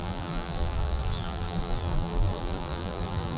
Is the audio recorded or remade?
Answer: remade